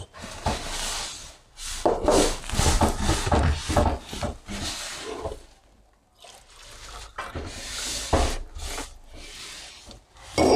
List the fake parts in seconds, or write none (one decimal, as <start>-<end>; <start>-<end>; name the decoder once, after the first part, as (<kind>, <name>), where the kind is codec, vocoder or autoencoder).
none